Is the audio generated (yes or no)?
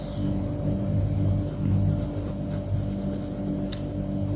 no